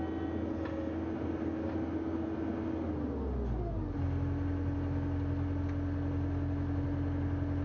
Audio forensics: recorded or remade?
recorded